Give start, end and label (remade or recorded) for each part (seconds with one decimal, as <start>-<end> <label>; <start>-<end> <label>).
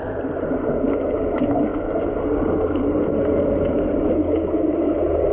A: 0.0-5.3 recorded